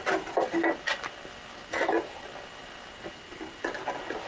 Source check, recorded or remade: recorded